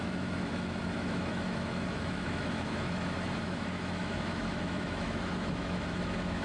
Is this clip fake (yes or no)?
yes